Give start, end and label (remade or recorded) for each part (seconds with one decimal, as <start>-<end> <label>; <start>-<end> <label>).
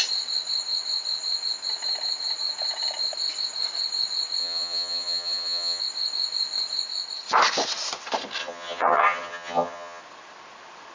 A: 0.0-4.4 recorded; 4.4-5.8 remade; 5.8-8.4 recorded; 8.4-10.0 remade; 10.0-10.9 recorded